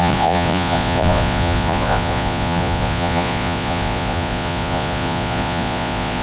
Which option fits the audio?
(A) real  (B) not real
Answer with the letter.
B